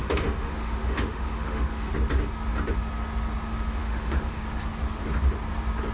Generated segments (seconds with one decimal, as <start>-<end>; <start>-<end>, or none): 0.0-1.9; 3.8-4.4